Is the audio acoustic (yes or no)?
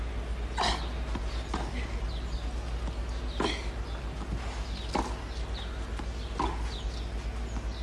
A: yes